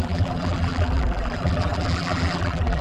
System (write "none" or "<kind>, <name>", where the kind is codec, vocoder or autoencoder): vocoder, BigVGAN v2